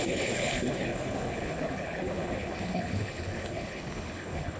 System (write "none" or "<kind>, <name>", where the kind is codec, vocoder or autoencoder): codec, HILCodec